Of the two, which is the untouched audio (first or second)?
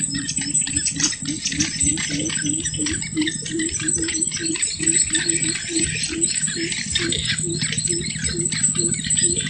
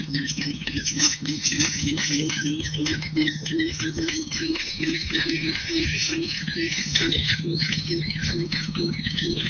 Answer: first